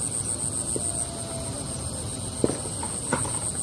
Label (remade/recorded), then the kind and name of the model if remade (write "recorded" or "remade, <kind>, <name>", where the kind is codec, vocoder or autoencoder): recorded